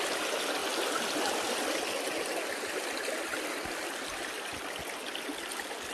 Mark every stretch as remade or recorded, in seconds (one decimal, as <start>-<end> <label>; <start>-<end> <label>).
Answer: 0.0-5.9 recorded